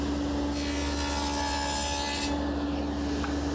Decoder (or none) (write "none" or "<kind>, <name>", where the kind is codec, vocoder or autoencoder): none